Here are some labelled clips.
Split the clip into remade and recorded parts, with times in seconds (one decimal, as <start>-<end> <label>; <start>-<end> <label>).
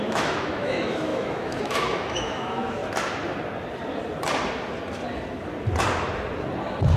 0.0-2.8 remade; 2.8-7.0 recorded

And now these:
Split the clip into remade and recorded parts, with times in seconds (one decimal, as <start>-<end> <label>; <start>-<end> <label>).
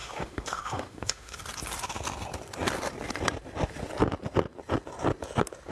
0.0-1.4 remade; 1.4-5.7 recorded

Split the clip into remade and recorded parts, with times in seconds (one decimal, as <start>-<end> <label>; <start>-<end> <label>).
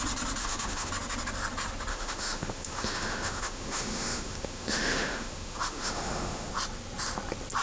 0.0-0.4 recorded; 0.4-0.9 remade; 0.9-1.9 recorded; 1.9-6.5 remade; 6.5-7.6 recorded